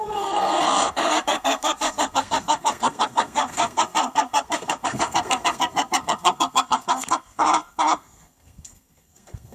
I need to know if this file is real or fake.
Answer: fake